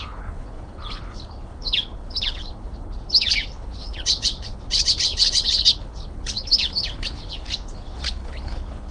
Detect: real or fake fake